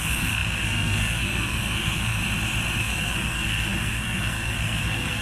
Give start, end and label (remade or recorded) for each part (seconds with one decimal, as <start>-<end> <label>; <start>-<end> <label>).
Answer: 0.0-2.2 remade; 2.2-2.8 recorded; 2.8-5.2 remade